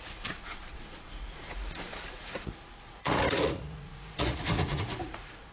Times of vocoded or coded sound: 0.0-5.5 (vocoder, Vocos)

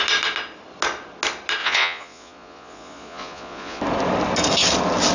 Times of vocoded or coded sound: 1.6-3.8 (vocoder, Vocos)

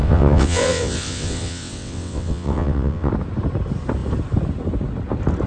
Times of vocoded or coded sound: 0.0-3.1 (vocoder, WaveNeXt)

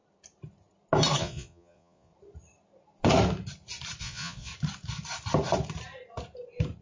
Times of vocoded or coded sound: 1.2-2.1 (vocoder, Vocos); 4.0-4.5

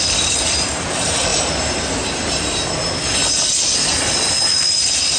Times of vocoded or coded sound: 0.0-1.3 (vocoder, BigVGAN v2); 4.4-5.2

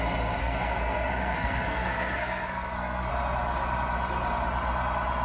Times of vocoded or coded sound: 0.4-3.1 (codec, SNAC)

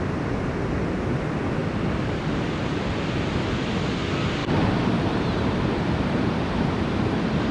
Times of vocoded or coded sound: 4.4-7.5 (vocoder, BigVGAN v2)

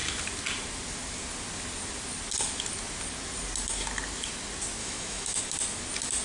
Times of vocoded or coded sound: 4.8-5.4 (autoencoder, DAC-VAE)